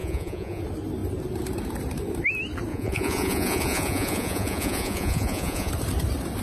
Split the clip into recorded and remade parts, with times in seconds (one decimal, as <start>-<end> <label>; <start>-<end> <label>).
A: 0.0-0.6 remade; 0.6-2.7 recorded; 2.7-5.7 remade; 5.7-6.4 recorded